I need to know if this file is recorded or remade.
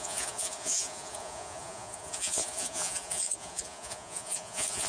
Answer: remade